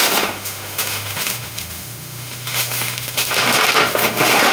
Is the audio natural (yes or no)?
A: no